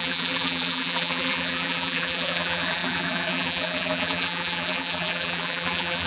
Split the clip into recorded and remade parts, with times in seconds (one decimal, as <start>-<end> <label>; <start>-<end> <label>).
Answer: 0.0-6.1 remade